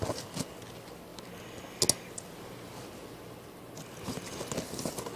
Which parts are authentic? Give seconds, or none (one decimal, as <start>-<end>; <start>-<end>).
0.0-5.2